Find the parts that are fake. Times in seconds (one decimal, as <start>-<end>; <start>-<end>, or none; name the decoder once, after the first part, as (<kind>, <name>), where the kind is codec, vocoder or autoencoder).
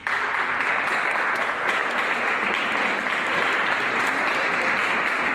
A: 1.3-1.8 (vocoder, Vocos)